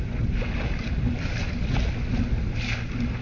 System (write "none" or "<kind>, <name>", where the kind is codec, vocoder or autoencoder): none